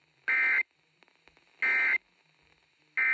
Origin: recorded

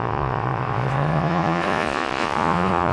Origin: remade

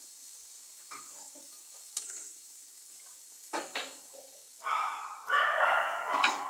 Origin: remade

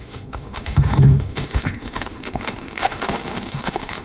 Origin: remade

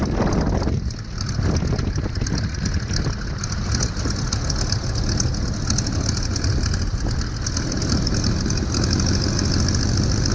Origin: recorded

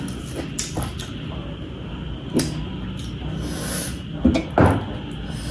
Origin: recorded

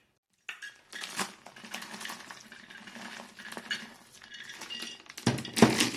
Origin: recorded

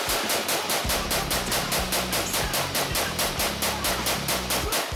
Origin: recorded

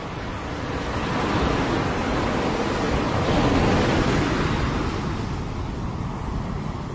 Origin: recorded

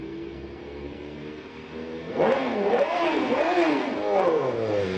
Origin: remade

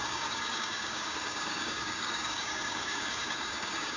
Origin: remade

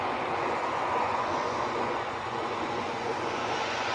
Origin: remade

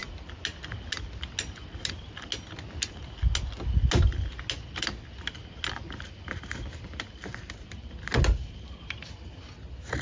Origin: recorded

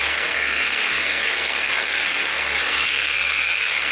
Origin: remade